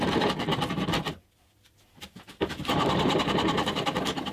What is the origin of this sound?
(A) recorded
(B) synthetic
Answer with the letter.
B